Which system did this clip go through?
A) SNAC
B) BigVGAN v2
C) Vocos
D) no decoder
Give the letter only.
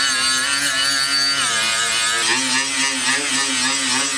D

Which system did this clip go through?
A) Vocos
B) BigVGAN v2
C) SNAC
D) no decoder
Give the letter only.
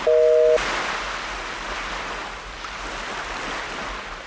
D